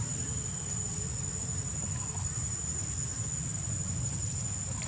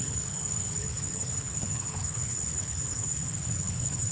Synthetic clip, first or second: second